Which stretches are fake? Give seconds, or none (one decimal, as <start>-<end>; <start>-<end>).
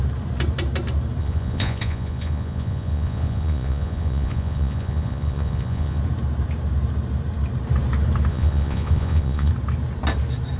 1.2-6.0; 8.3-9.5